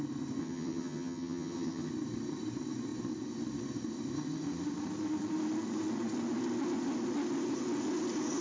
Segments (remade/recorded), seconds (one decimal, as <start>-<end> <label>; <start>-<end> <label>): 0.0-0.4 recorded; 0.4-1.9 remade; 1.9-8.4 recorded